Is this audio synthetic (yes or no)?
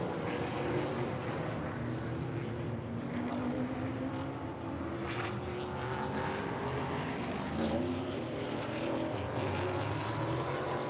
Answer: no